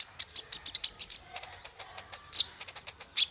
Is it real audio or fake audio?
real